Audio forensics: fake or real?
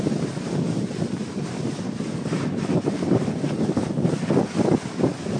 real